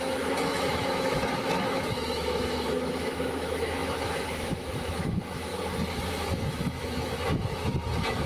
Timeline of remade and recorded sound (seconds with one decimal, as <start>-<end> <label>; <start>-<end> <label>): 0.0-5.5 remade; 5.5-6.1 recorded; 6.1-8.3 remade